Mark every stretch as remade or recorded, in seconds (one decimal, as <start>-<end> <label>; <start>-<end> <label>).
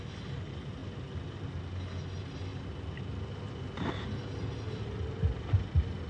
0.0-6.1 recorded